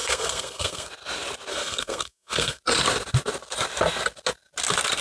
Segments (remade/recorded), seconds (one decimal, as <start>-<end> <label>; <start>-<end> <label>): 0.0-0.9 remade; 0.9-1.5 recorded; 1.5-2.6 remade; 2.6-5.0 recorded